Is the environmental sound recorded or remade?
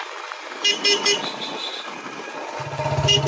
recorded